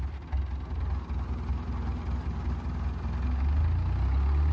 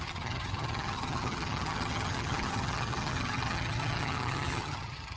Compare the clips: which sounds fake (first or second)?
second